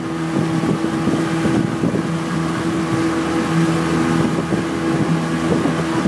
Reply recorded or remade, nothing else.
recorded